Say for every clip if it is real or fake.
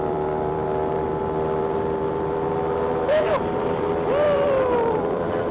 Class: fake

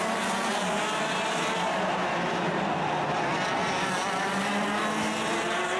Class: real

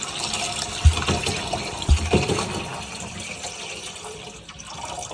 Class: fake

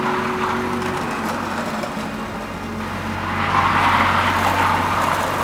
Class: real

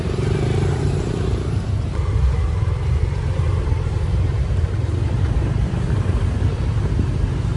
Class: fake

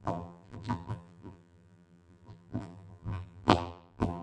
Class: fake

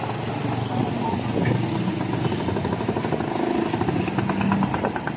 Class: real